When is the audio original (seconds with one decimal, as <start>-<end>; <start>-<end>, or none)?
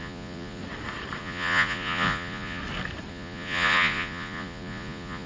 0.6-1.2; 2.6-3.1